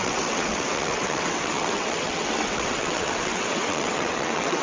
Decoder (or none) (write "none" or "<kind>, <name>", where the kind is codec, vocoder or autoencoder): vocoder, WaveNeXt